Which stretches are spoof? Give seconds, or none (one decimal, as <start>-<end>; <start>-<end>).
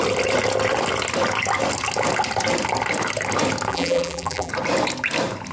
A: 3.7-4.5